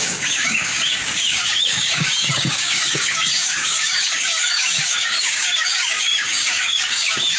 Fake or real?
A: fake